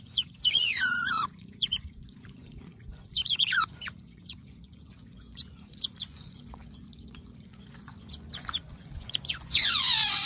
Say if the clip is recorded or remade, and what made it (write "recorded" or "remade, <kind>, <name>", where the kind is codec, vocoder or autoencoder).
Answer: remade, vocoder, Vocos